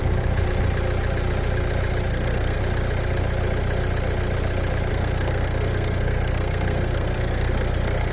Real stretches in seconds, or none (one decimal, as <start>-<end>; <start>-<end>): 0.0-2.1; 2.6-4.9